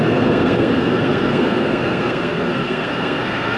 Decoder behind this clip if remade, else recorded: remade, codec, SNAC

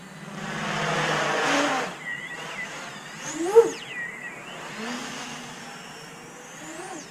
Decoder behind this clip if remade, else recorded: recorded